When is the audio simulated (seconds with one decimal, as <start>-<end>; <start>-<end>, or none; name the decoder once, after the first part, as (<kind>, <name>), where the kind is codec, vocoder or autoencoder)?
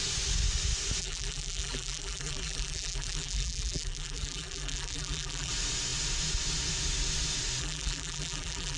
1.0-5.5 (vocoder, BigVGAN v2); 7.6-8.8